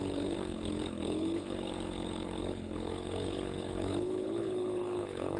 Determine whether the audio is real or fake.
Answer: fake